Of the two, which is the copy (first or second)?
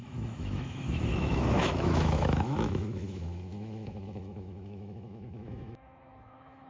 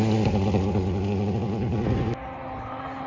first